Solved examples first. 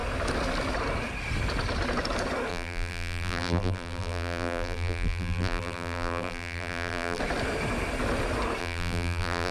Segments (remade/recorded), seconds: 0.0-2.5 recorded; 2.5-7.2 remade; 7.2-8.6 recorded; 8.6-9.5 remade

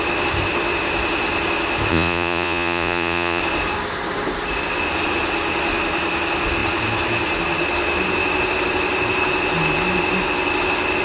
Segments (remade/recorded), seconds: 0.0-1.9 recorded; 1.9-3.4 remade; 3.4-11.0 recorded

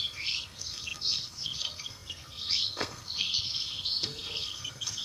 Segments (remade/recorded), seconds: 0.0-5.0 remade

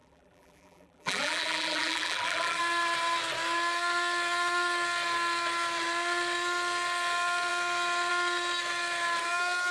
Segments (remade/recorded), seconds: 0.0-2.6 remade; 2.6-9.7 recorded